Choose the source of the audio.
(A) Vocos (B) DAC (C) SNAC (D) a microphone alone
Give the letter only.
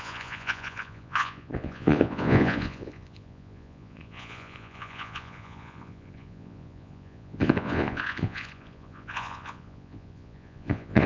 A